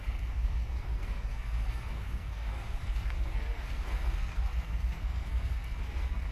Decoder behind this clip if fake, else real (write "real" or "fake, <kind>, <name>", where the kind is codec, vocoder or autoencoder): fake, codec, SNAC